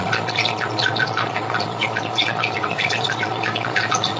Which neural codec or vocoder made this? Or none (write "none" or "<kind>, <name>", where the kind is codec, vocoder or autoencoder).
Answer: vocoder, Vocos